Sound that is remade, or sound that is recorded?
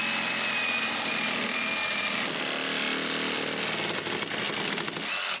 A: recorded